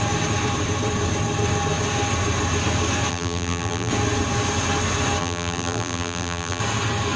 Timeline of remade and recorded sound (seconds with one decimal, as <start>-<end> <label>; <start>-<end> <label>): 0.0-3.1 recorded; 3.1-3.9 remade; 3.9-5.2 recorded; 5.2-6.6 remade; 6.6-7.2 recorded